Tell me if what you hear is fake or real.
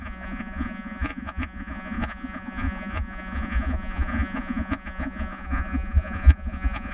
fake